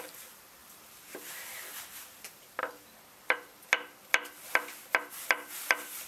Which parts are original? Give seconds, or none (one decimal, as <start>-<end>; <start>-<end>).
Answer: 0.0-6.1